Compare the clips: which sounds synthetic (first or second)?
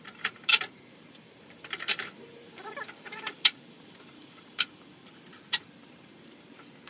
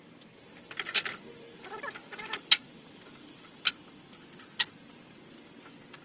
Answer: first